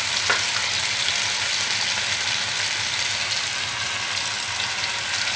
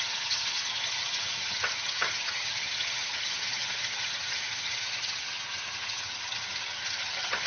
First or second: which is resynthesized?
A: second